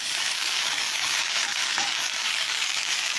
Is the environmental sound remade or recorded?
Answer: remade